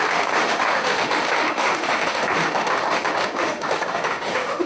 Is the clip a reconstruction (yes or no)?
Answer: yes